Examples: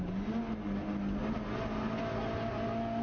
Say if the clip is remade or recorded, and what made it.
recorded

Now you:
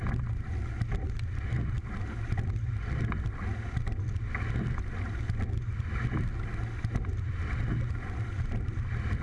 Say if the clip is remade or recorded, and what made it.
recorded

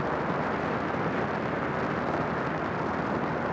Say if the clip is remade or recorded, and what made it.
recorded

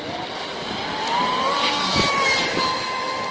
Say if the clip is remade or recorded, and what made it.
recorded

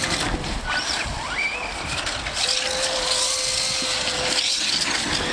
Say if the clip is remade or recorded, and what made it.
recorded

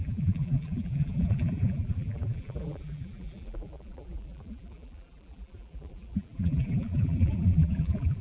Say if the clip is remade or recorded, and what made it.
remade, vocoder, BigVGAN v2